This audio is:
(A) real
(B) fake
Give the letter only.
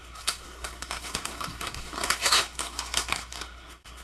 B